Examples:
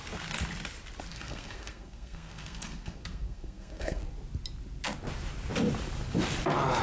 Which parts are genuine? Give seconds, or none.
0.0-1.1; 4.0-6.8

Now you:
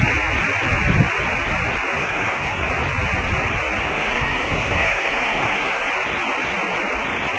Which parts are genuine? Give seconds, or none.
0.0-2.0; 2.7-3.8; 5.9-7.4